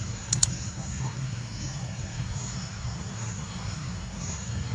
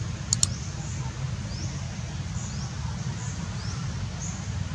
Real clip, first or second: second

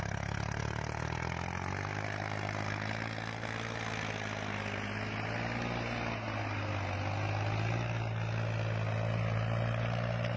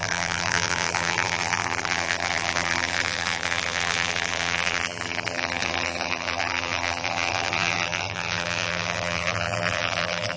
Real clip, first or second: first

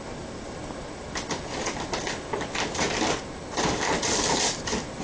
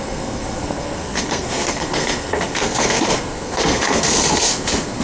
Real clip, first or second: first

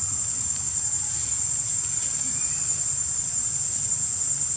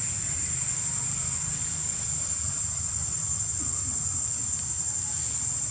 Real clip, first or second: second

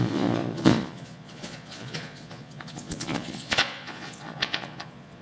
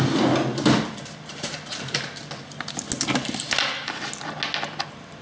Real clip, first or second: second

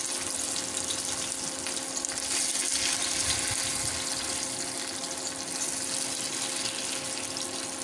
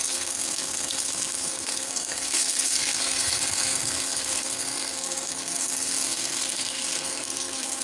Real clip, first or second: first